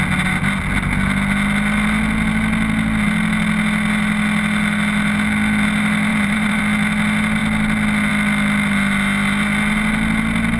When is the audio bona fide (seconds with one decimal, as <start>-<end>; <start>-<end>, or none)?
0.0-6.1; 6.6-10.6

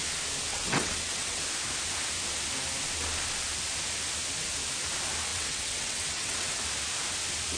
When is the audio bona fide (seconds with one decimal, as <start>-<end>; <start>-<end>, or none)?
0.0-0.5; 1.4-5.3; 6.6-7.6

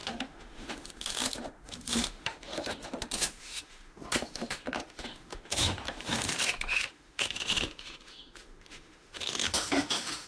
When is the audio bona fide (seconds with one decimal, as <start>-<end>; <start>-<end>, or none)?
none

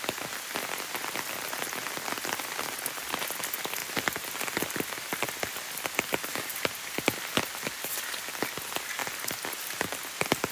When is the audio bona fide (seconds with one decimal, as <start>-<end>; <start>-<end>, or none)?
0.0-3.8; 8.0-10.5